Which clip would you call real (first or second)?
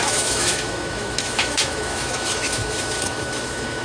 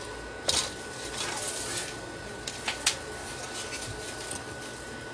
second